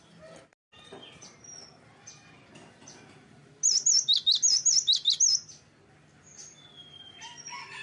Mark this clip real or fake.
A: real